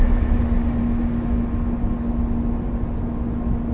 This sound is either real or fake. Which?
real